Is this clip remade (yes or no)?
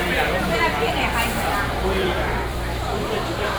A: yes